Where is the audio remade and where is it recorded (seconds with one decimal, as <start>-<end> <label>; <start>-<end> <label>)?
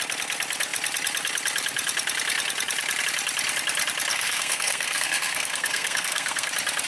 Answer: 0.0-4.1 recorded; 4.1-6.5 remade; 6.5-6.9 recorded